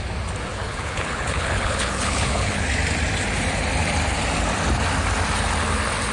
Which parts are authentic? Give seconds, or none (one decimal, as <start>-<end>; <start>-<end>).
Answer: 0.0-0.5; 2.6-6.1

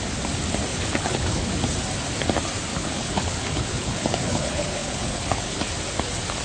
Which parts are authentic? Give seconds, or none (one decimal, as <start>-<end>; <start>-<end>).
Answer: 0.0-0.7; 1.5-2.7; 5.7-6.4